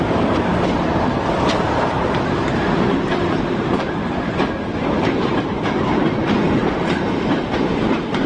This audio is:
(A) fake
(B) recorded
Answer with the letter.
A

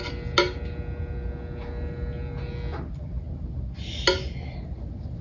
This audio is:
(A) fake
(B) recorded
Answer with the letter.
B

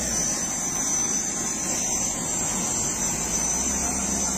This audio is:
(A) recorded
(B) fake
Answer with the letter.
A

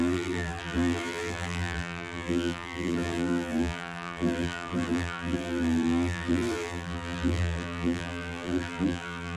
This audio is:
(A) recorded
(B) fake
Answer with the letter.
B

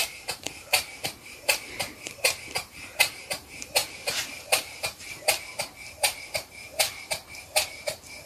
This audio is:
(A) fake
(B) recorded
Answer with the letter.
A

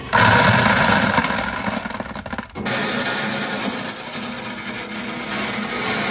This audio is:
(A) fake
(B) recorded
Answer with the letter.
B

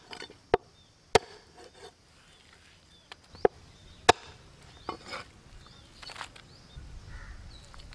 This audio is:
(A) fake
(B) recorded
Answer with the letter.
B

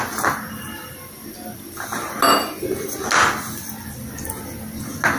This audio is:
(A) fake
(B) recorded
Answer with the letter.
B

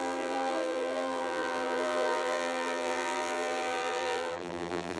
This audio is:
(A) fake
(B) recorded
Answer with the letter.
A